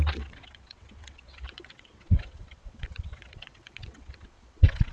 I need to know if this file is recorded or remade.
remade